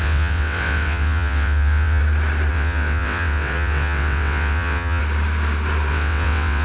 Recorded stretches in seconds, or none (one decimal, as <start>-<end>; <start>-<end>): 2.0-2.5; 5.0-5.9